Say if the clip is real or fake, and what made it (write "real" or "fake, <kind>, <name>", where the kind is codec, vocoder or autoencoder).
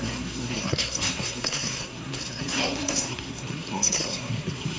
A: fake, codec, SNAC